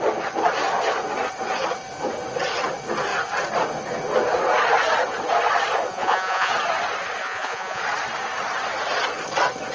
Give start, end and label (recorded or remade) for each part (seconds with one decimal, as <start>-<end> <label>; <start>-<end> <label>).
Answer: 0.0-5.9 recorded; 5.9-6.5 remade; 6.5-7.2 recorded; 7.2-7.8 remade; 7.8-9.7 recorded